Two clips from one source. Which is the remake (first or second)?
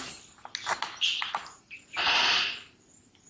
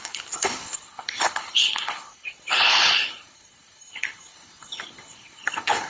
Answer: second